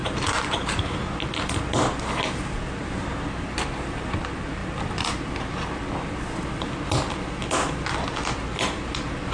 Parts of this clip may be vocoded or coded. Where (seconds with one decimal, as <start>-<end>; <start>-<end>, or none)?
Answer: 0.0-0.8